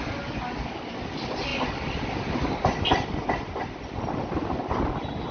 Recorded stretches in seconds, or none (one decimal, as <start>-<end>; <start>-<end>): 0.0-5.3